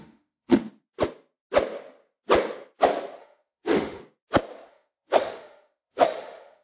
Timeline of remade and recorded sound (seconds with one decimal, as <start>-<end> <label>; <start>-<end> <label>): 0.0-0.6 remade; 0.6-3.2 recorded; 3.2-4.0 remade; 4.0-4.7 recorded; 4.7-6.6 remade